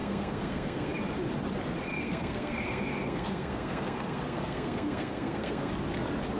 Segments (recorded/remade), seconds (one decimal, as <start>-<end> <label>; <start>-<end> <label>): 0.0-0.9 remade; 0.9-1.9 recorded; 1.9-5.7 remade; 5.7-6.4 recorded